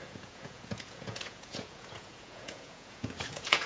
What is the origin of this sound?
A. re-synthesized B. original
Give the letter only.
A